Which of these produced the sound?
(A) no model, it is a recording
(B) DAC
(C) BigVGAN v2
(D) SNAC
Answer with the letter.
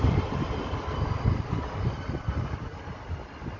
C